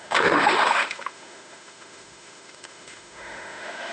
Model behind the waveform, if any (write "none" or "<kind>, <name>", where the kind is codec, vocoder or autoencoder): autoencoder, DAC-VAE